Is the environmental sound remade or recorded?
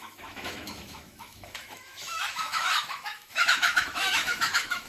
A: remade